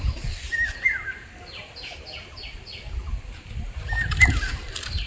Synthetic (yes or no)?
no